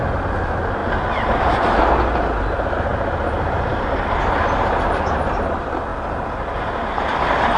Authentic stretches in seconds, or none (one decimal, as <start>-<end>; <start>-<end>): 0.0-7.6